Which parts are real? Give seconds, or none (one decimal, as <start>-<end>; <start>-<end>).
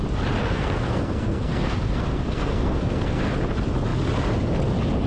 0.0-0.4; 3.3-5.1